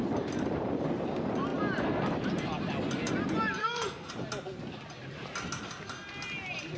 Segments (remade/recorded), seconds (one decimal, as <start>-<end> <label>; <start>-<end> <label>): 0.0-3.6 recorded; 3.6-4.1 remade; 4.1-6.8 recorded